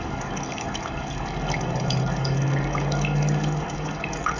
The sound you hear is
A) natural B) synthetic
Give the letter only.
B